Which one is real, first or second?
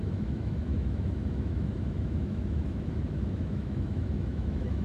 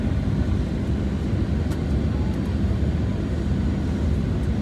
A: second